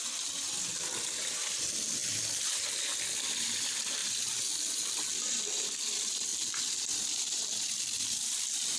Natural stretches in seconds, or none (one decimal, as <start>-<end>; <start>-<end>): 2.0-3.3; 4.0-5.2; 6.3-6.8